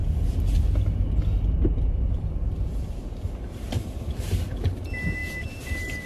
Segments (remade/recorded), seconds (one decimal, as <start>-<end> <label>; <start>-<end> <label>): 0.0-3.7 recorded; 3.7-6.1 remade